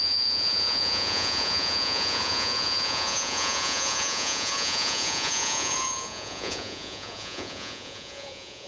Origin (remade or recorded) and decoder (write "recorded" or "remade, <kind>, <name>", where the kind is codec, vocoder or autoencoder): remade, vocoder, Vocos